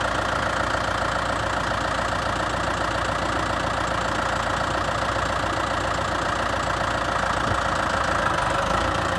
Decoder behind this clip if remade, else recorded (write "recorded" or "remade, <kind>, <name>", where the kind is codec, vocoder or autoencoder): recorded